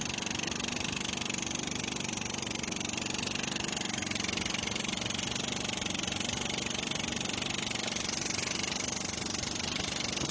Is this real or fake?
real